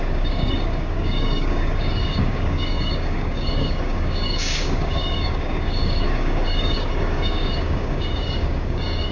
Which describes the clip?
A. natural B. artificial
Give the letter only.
B